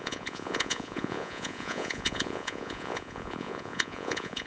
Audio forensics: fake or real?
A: fake